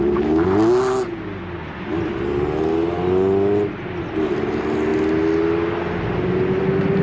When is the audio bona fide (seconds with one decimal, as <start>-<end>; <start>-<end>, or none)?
0.0-7.0